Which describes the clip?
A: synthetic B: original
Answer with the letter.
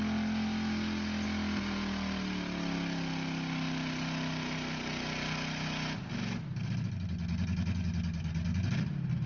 B